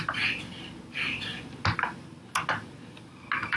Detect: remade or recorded recorded